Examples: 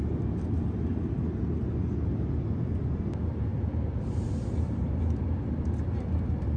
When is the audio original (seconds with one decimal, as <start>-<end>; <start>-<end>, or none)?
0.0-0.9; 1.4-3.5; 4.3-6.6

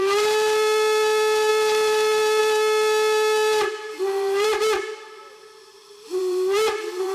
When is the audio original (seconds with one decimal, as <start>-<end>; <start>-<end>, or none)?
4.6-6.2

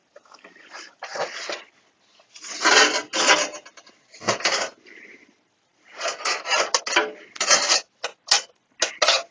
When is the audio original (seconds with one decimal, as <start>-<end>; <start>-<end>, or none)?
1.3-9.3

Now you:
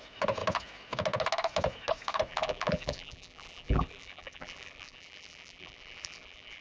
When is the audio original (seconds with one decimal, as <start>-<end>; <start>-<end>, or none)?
0.0-2.3